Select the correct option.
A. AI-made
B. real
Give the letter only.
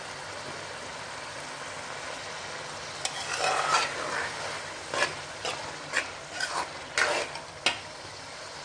B